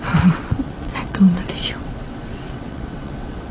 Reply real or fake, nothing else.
fake